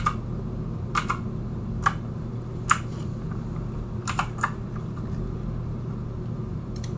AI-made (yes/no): no